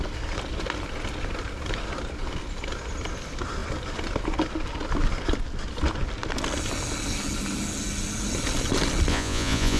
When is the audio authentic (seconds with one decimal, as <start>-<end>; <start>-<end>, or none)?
0.0-9.1